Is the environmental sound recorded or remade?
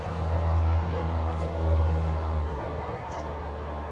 remade